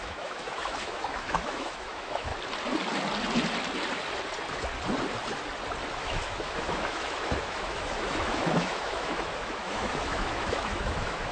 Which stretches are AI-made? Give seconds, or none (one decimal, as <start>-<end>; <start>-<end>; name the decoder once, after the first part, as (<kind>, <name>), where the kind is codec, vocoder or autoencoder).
0.0-2.3 (autoencoder, DAC-VAE); 6.0-11.3